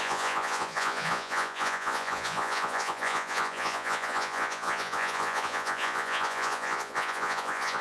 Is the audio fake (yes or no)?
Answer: yes